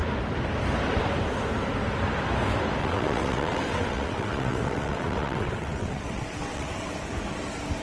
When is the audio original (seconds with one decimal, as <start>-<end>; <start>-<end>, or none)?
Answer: 0.0-2.8; 6.9-7.8